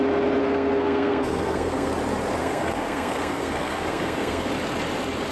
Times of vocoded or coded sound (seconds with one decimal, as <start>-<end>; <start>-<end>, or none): 0.4-1.9; 2.4-4.5